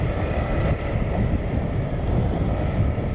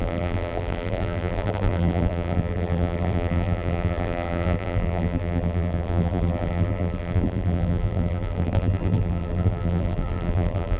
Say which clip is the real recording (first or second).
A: first